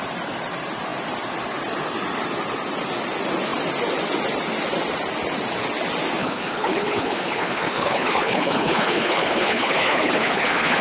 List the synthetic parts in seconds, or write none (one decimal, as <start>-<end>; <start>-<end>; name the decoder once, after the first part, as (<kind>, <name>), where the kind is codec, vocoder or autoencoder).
6.2-10.8 (codec, HILCodec)

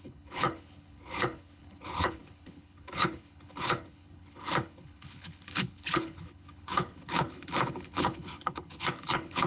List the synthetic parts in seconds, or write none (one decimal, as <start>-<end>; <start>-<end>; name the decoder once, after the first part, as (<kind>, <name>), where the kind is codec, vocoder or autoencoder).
0.0-9.5 (codec, HILCodec)

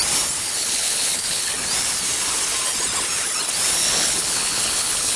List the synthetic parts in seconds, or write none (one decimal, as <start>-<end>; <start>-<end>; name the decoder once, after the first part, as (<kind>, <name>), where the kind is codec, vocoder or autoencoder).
0.4-1.5 (codec, HILCodec); 3.8-5.2

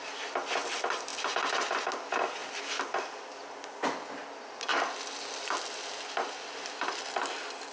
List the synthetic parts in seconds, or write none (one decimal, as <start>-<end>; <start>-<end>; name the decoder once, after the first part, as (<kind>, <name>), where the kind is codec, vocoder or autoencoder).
none